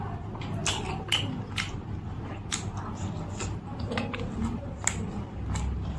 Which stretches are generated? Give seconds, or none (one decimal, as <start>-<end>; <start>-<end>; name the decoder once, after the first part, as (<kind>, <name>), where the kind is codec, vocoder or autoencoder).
none